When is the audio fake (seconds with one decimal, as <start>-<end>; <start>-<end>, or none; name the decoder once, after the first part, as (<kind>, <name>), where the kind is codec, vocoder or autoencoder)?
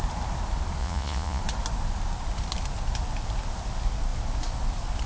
0.8-1.4 (vocoder, Vocos)